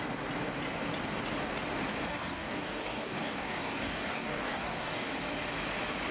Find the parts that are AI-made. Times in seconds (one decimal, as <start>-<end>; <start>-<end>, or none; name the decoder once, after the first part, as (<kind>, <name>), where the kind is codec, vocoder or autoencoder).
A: 2.1-5.1 (codec, DAC)